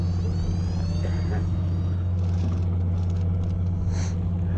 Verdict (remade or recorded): recorded